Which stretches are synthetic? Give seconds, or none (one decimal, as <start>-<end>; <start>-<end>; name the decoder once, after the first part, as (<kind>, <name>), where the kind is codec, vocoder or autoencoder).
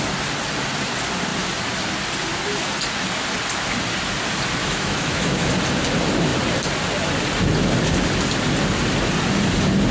4.6-5.5 (autoencoder, DAC-VAE)